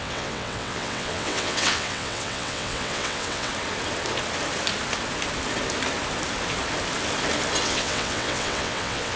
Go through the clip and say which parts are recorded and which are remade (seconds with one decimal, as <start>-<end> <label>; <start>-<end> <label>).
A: 0.0-3.5 remade; 3.5-7.6 recorded; 7.6-9.2 remade